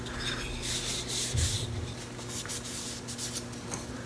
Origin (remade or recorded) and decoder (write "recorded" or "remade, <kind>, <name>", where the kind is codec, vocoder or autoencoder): recorded